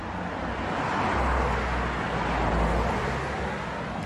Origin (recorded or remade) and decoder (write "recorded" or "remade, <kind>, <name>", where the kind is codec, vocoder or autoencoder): recorded